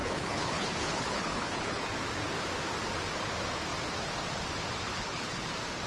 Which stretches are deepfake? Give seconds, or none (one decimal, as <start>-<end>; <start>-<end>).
0.0-1.9; 4.9-5.5